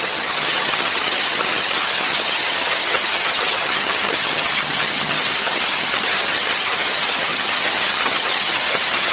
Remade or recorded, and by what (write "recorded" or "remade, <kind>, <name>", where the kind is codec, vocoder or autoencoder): remade, vocoder, HiFi-GAN